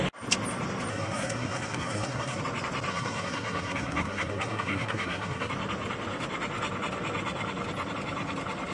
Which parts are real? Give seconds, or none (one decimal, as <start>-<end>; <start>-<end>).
0.0-0.9; 2.4-2.9; 5.5-8.7